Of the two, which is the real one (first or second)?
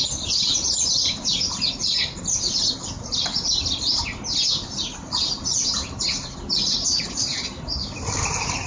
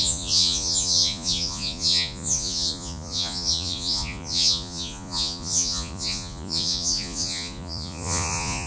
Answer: first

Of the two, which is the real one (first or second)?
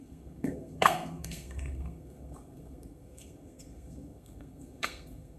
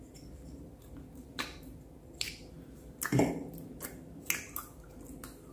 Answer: second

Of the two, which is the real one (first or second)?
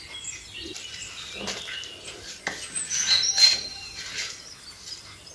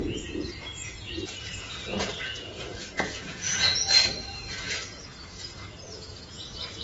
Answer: first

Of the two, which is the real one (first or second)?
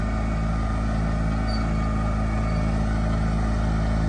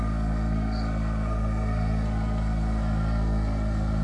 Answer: first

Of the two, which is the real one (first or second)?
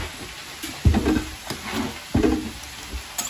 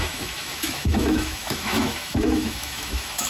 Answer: first